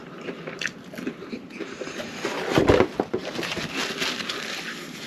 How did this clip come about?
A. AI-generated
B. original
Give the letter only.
B